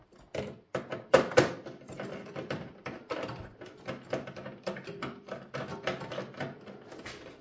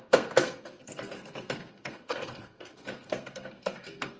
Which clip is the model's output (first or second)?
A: second